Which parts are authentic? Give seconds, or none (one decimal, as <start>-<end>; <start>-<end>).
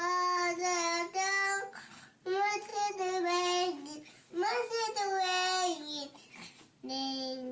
0.0-7.5